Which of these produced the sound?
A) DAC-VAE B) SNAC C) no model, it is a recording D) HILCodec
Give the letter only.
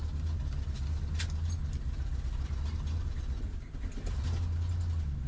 C